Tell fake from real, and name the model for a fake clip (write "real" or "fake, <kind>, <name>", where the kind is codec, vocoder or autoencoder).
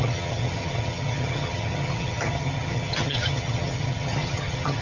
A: fake, vocoder, HiFi-GAN